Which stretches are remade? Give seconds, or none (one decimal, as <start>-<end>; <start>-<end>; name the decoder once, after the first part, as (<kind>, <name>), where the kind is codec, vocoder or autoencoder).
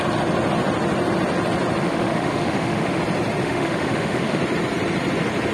1.8-3.0 (autoencoder, DAC-VAE); 3.4-4.4